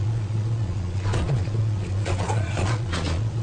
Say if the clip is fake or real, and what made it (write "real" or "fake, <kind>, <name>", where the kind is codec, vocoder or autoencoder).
fake, vocoder, Vocos